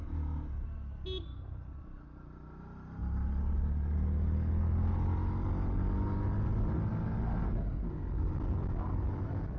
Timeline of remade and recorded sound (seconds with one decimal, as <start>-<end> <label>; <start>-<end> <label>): 0.0-9.6 recorded

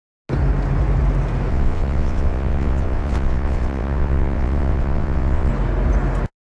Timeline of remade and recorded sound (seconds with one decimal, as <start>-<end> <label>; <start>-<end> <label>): 0.0-1.5 recorded; 1.5-5.5 remade; 5.5-6.6 recorded

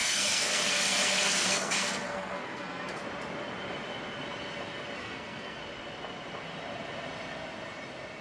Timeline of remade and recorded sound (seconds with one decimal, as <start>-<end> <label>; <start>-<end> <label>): 0.0-3.0 remade; 3.0-5.0 recorded; 5.0-5.6 remade; 5.6-8.2 recorded

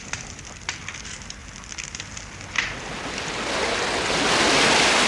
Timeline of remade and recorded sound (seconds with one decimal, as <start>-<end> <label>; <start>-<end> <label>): 0.0-5.1 recorded

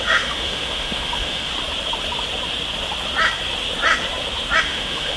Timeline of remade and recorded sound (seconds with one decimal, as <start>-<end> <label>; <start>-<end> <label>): 0.0-1.5 remade; 1.5-4.6 recorded; 4.6-5.2 remade

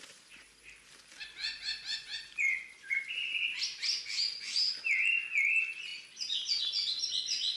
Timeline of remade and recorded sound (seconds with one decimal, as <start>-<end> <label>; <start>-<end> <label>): 0.0-1.4 recorded; 1.4-3.1 remade; 3.1-7.6 recorded